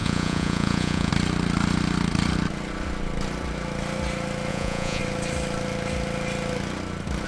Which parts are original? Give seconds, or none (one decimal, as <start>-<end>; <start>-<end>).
1.1-4.5; 5.0-7.3